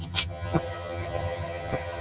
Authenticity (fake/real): fake